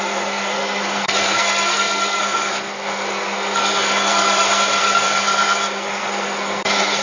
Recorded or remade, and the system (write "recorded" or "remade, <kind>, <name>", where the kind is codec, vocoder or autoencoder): remade, codec, SNAC